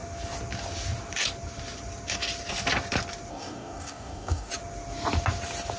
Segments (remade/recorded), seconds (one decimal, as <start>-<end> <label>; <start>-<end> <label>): 0.0-3.3 recorded; 3.3-4.5 remade; 4.5-5.8 recorded